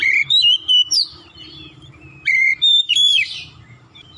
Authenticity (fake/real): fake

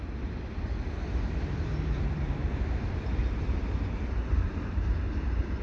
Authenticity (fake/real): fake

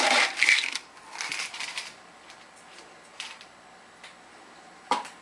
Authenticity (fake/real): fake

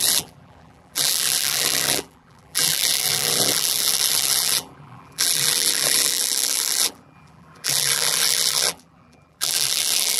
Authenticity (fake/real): fake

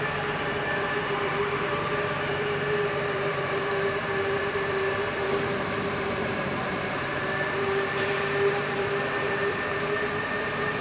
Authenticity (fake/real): fake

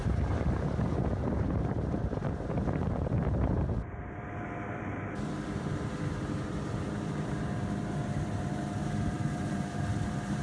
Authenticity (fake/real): fake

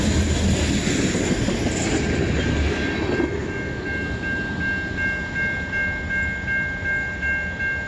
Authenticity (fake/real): real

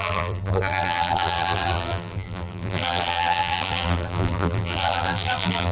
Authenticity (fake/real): fake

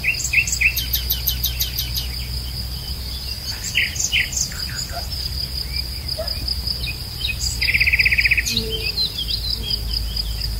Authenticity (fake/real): real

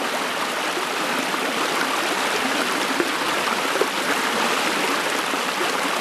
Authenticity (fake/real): real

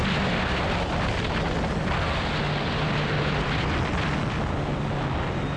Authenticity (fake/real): real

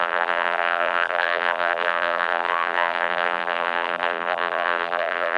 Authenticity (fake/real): fake